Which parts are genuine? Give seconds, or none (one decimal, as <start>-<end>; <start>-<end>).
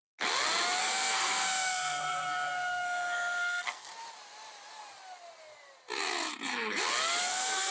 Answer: 0.0-0.8; 3.9-7.2